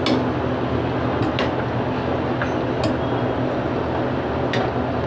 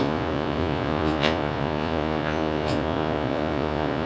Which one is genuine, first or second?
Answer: first